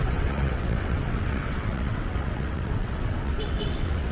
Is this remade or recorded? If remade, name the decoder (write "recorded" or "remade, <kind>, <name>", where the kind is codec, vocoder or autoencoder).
remade, vocoder, WaveNeXt